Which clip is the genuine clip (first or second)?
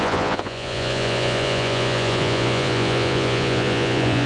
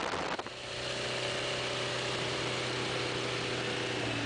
second